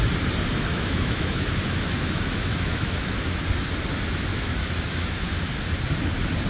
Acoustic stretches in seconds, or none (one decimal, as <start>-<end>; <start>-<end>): 0.0-0.7; 3.4-4.3; 5.5-6.5